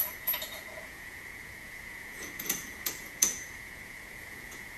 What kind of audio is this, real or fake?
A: fake